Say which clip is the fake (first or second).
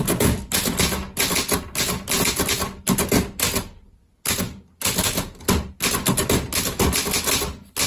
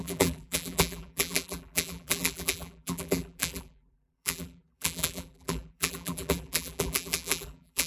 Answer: second